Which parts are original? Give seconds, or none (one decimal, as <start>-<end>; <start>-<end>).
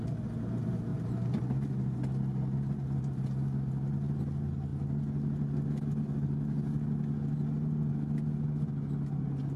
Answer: 0.0-9.6